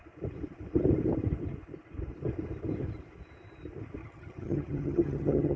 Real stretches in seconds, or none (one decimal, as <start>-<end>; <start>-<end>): 0.0-4.0